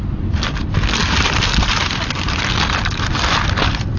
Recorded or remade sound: remade